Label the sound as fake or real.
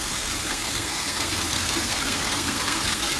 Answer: fake